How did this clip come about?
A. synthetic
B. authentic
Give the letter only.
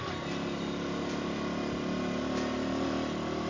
B